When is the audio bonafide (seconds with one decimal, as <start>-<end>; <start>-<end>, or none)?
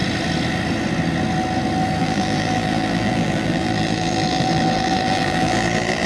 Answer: 0.0-2.0